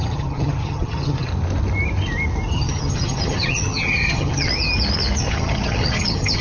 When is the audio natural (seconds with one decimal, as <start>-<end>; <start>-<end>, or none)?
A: 1.3-2.5; 4.5-5.2